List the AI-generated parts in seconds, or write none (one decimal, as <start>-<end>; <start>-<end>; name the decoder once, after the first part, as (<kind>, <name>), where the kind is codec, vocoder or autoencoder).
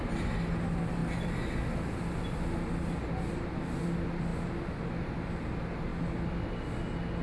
none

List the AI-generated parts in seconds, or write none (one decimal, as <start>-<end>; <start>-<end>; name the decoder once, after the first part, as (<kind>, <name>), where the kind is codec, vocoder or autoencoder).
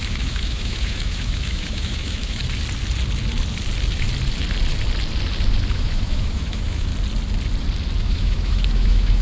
0.0-2.4 (autoencoder, DAC-VAE); 5.7-6.9; 8.0-9.2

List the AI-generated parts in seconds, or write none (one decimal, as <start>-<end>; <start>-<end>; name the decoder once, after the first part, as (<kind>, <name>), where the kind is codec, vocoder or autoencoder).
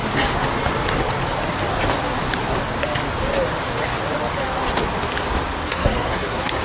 5.7-6.6 (codec, SNAC)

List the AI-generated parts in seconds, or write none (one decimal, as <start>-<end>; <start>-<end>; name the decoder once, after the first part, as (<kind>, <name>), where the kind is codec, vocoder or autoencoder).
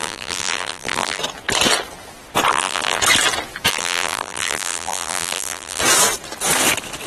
0.0-1.2 (vocoder, BigVGAN v2); 2.5-3.0; 3.7-5.8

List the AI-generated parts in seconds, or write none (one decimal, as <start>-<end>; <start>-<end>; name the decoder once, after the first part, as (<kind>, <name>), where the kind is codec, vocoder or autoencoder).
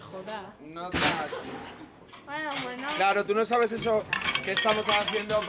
none